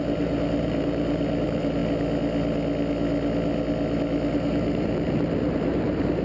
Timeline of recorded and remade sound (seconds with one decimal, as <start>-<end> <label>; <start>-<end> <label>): 0.0-1.8 remade; 1.8-4.3 recorded; 4.3-6.2 remade